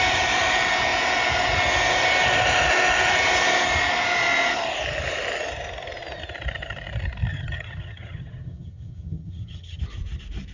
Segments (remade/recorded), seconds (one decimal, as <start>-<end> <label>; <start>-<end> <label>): 0.0-7.3 recorded; 7.3-9.8 remade; 9.8-10.5 recorded